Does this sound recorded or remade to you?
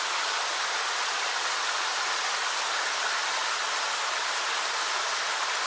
recorded